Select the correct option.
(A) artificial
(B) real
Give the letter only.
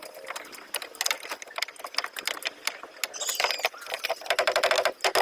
B